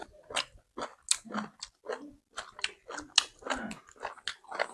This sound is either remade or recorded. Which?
recorded